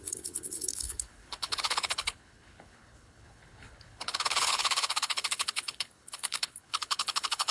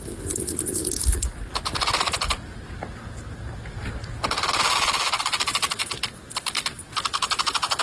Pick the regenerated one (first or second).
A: first